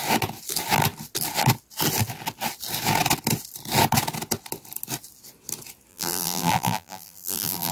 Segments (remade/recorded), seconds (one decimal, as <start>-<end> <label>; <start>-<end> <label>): 0.0-5.9 recorded; 5.9-7.7 remade